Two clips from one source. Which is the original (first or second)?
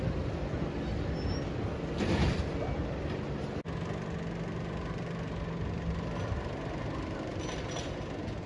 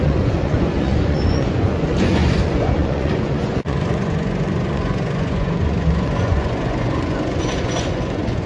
first